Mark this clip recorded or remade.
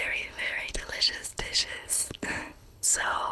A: remade